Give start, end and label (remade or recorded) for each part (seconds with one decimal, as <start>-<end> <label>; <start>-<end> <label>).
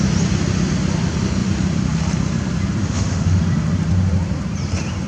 0.0-2.8 recorded; 2.8-3.4 remade; 3.4-5.1 recorded